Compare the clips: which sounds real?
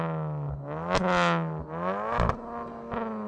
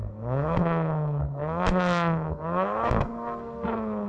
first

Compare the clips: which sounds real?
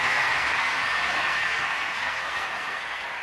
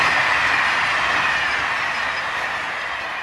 second